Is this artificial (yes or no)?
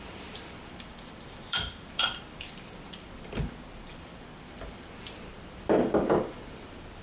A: yes